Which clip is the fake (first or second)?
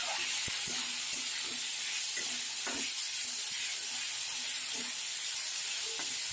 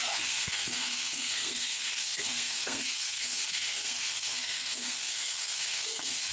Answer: second